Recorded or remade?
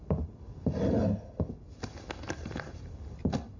recorded